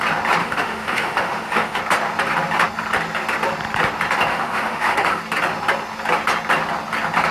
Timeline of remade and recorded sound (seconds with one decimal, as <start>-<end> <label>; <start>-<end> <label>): 0.0-0.4 recorded; 0.4-1.8 remade; 1.8-4.3 recorded; 4.3-5.2 remade; 5.2-7.3 recorded